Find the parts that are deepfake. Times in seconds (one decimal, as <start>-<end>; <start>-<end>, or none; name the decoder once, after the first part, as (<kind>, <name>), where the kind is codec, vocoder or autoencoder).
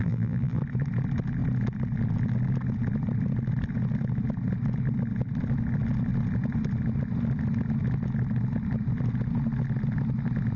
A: 0.0-0.6 (vocoder, BigVGAN v2)